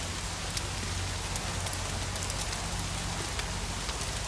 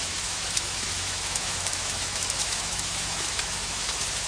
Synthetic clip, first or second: second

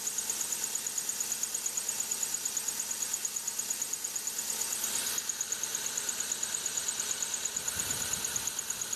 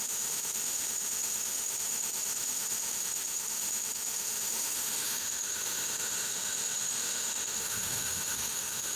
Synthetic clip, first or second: second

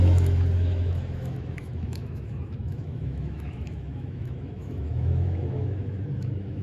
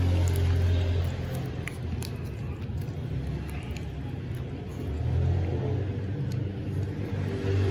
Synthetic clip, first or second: first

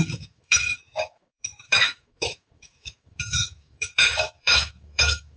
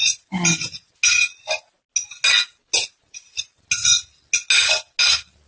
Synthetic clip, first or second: first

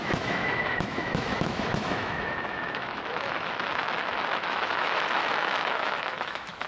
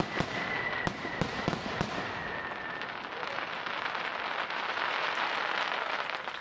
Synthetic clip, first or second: first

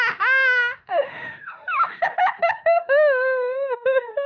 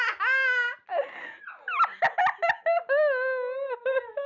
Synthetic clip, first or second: first